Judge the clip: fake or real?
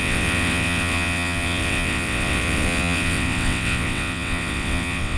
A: fake